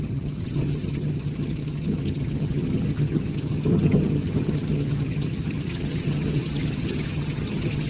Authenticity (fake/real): fake